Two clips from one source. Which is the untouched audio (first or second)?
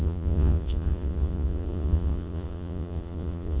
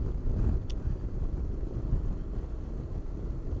second